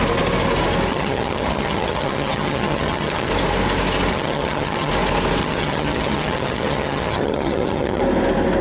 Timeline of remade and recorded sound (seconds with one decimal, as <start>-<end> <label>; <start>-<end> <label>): 0.0-0.9 recorded; 0.9-3.3 remade; 3.3-4.1 recorded; 4.1-4.9 remade; 4.9-5.4 recorded; 5.4-8.0 remade; 8.0-8.6 recorded